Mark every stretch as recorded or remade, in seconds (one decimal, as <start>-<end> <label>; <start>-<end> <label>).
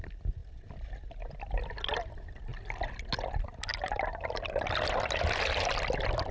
0.0-6.3 recorded